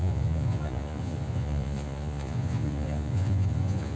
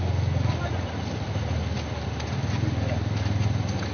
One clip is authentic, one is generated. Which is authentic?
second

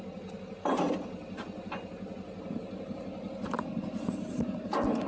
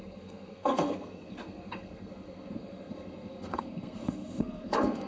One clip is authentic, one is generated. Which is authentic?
first